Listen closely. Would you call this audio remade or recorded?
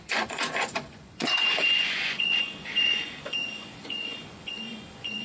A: remade